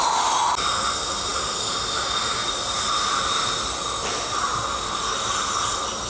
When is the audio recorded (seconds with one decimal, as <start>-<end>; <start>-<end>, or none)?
0.0-6.1